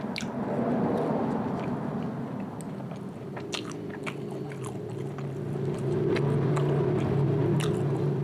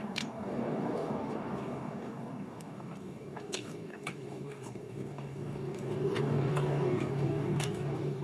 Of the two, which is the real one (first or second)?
first